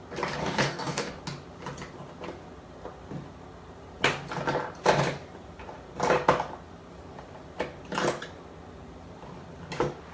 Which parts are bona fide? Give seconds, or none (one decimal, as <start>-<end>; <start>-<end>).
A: 0.0-0.4; 1.2-10.1